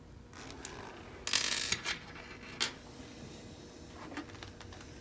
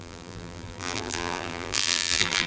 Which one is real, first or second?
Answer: first